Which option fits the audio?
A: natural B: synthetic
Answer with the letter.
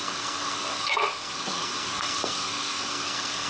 B